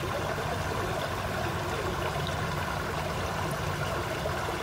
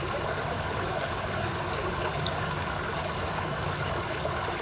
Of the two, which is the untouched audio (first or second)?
first